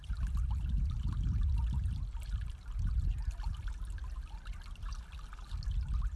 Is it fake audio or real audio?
real